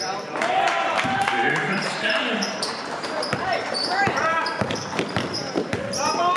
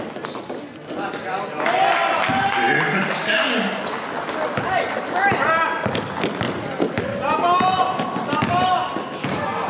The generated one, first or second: first